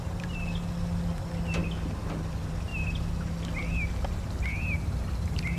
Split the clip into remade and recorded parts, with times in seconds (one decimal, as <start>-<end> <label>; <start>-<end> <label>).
0.0-5.6 recorded